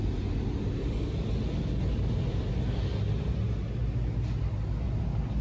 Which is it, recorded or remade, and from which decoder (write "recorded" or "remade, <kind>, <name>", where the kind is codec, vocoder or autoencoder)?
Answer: recorded